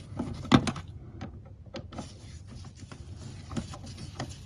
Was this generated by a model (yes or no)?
no